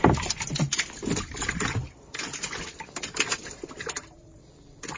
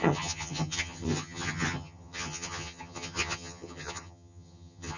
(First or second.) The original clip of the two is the first